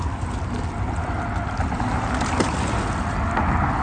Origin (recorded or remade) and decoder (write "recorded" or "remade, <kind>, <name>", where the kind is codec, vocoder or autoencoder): recorded